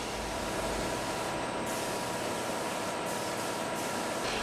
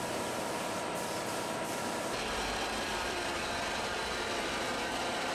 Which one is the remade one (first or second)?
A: second